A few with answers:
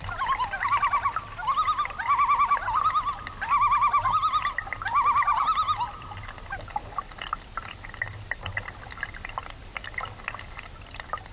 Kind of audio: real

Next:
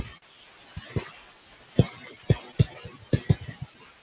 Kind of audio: real